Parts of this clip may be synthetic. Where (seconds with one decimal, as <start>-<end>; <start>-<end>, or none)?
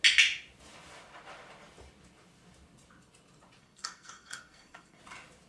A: 3.6-5.0